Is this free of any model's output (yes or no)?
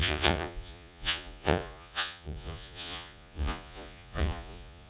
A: no